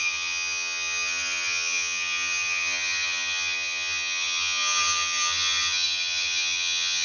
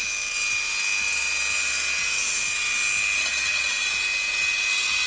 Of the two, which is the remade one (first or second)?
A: first